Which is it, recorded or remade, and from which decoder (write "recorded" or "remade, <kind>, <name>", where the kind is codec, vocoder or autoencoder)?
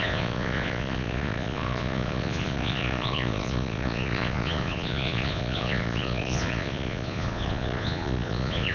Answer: remade, vocoder, Vocos